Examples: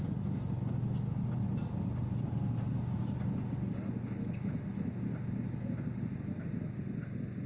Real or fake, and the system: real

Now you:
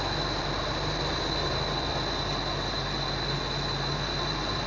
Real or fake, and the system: real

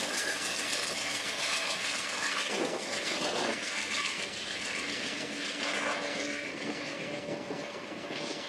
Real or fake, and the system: fake, codec, SNAC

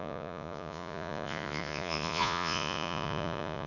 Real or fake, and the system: fake, vocoder, Vocos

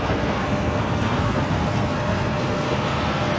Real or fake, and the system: fake, codec, SNAC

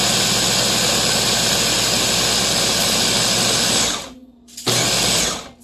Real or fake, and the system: real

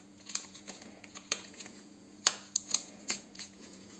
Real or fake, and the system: fake, vocoder, Vocos